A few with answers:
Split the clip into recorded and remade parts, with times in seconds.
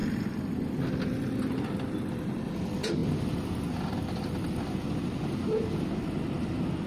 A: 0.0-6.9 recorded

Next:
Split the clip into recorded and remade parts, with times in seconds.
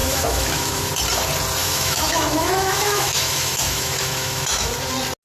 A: 0.0-0.9 remade; 0.9-1.6 recorded; 1.6-4.7 remade; 4.7-5.2 recorded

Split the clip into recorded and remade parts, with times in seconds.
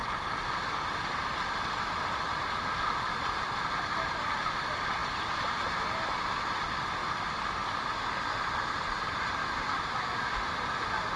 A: 0.0-9.4 recorded; 9.4-10.3 remade; 10.3-11.2 recorded